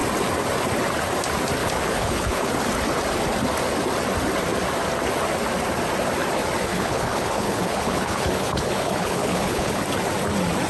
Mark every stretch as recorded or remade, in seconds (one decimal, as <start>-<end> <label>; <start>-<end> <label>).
0.0-1.6 recorded; 1.6-2.5 remade; 2.5-6.7 recorded; 6.7-9.8 remade; 9.8-10.7 recorded